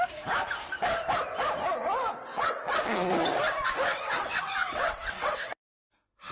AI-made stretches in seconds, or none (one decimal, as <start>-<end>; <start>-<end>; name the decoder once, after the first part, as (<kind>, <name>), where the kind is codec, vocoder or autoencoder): 2.3-3.1 (vocoder, WaveNeXt); 3.9-5.6